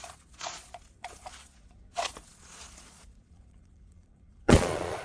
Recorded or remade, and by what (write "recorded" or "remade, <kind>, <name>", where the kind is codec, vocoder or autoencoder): remade, vocoder, Vocos